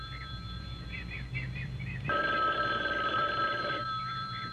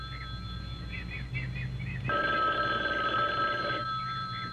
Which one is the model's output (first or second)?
first